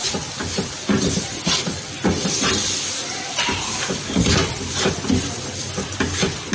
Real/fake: real